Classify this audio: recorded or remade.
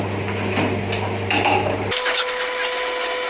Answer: recorded